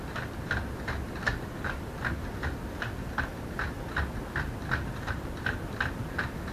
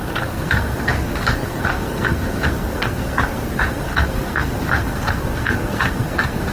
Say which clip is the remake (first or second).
second